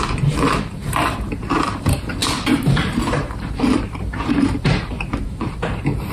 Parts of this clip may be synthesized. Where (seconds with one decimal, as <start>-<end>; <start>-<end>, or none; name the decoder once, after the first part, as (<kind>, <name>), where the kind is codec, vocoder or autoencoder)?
0.0-6.1 (vocoder, BigVGAN v2)

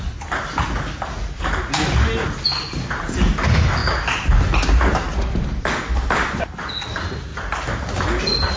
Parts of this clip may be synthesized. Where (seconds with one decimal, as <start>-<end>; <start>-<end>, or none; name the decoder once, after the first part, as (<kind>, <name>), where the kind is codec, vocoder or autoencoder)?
none